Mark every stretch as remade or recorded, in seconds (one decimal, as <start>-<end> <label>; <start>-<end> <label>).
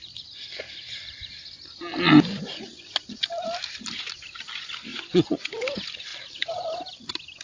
0.0-4.9 recorded; 4.9-5.5 remade; 5.5-7.4 recorded